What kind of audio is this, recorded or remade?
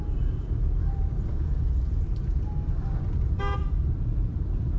remade